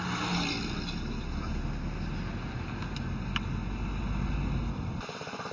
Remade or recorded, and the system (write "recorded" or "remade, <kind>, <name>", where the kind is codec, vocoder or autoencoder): recorded